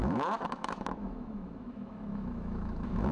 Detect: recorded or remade remade